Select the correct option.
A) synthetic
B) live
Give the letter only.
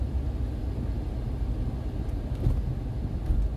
B